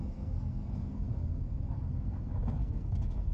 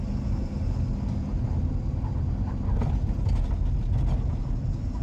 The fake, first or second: first